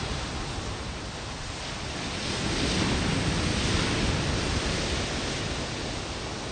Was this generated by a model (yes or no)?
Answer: no